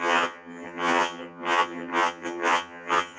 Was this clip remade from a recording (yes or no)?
yes